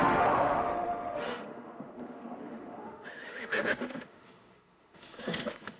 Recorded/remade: remade